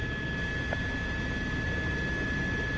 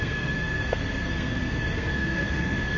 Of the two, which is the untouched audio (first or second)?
first